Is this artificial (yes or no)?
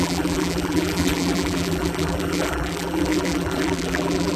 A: yes